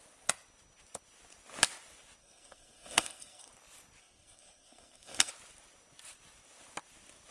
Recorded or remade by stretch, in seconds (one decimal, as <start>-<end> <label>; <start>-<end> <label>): 0.0-2.2 recorded; 2.2-3.5 remade; 3.5-4.0 recorded; 4.0-5.3 remade; 5.3-7.3 recorded